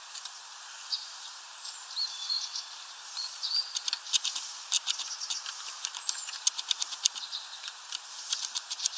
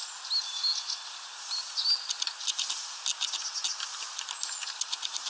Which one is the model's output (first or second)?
first